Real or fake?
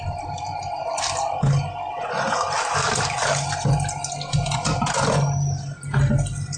real